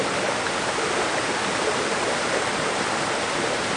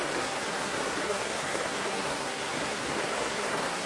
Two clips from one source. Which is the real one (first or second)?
first